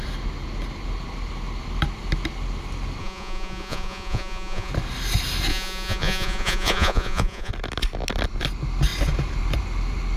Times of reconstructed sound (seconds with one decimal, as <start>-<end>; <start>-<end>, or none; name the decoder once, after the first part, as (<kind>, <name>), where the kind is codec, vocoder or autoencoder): 3.0-4.7 (vocoder, Vocos); 5.5-7.5